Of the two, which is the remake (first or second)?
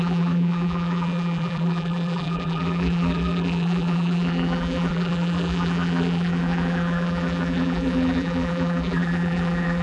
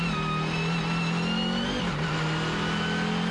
first